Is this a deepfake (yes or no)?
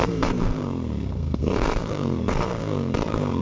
yes